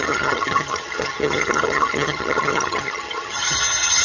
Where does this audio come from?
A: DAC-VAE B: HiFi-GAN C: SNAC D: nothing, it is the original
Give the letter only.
B